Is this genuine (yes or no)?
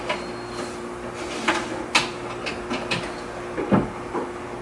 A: yes